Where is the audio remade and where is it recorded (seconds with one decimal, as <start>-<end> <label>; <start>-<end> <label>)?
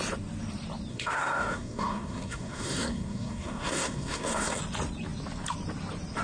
0.0-0.9 recorded; 0.9-4.6 remade; 4.6-6.2 recorded